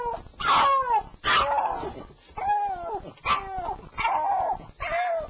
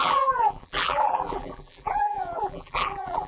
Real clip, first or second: first